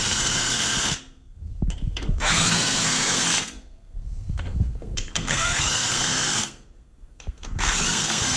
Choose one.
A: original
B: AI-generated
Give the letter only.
B